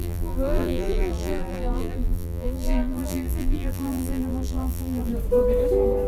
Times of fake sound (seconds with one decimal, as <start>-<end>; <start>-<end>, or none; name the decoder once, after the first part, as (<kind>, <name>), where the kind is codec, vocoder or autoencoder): 0.0-5.1 (vocoder, BigVGAN v2)